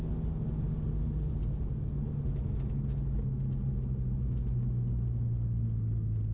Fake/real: real